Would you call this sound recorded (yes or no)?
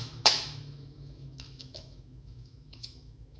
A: no